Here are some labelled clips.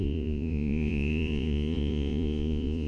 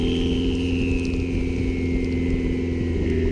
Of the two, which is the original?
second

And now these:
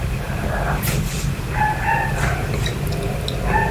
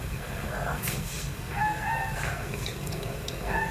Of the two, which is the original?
first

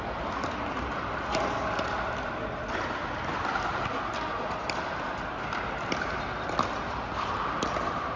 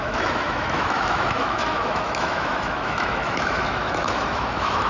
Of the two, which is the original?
first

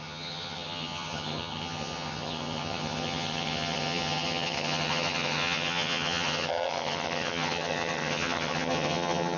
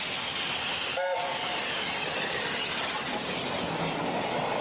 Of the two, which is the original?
second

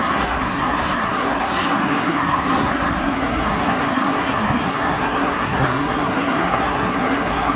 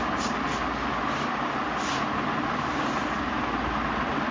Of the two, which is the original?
second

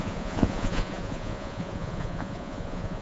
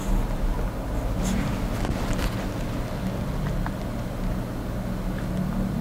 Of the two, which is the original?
second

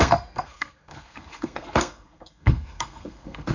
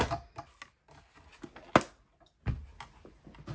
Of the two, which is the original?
second